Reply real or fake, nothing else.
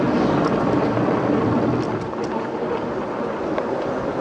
real